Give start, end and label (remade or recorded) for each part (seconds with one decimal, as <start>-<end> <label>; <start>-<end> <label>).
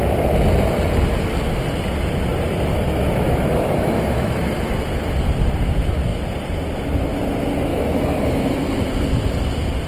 0.0-2.7 recorded; 2.7-4.8 remade; 4.8-7.7 recorded; 7.7-8.5 remade; 8.5-9.9 recorded